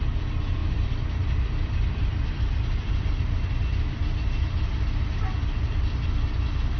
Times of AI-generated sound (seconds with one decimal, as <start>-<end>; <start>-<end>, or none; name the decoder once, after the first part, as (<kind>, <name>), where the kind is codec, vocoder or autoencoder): 0.6-3.0 (vocoder, BigVGAN v2)